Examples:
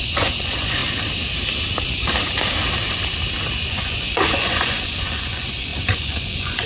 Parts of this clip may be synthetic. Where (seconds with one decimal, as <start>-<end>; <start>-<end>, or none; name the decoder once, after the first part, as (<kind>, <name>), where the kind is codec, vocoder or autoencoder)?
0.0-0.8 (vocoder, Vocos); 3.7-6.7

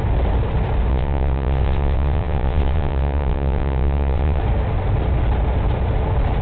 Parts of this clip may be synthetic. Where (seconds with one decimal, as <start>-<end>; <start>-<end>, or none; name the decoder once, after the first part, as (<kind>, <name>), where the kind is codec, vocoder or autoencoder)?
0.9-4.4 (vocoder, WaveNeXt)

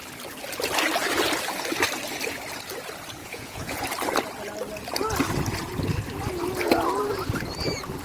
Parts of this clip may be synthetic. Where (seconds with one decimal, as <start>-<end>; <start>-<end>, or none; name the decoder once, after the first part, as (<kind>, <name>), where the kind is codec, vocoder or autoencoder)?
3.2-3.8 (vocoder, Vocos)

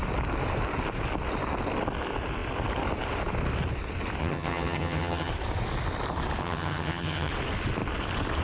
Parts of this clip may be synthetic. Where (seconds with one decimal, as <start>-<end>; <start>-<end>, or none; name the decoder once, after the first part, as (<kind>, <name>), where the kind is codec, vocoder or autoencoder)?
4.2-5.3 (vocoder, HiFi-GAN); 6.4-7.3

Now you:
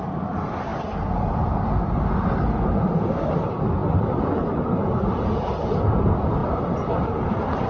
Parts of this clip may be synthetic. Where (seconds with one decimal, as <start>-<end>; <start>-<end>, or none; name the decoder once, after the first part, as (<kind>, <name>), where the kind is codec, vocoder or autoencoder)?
none